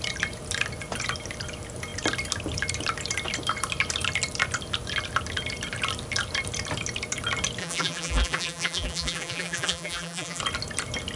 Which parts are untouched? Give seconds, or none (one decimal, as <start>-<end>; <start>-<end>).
0.0-7.6; 10.4-11.2